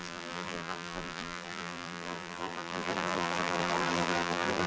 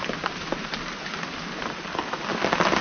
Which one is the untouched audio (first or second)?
second